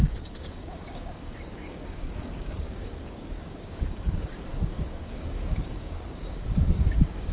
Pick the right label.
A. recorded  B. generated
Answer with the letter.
B